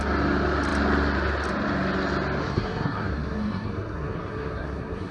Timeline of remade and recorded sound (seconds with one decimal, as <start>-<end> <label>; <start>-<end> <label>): 0.0-2.4 recorded; 2.4-5.1 remade